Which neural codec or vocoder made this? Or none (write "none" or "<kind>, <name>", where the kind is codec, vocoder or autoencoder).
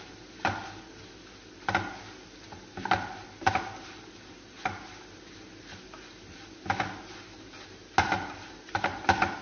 none